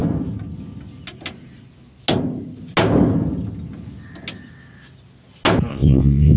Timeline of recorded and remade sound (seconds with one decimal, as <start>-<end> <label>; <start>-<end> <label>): 0.0-5.7 recorded; 5.7-6.4 remade